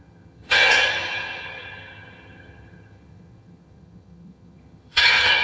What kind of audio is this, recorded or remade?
remade